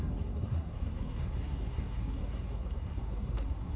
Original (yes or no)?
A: no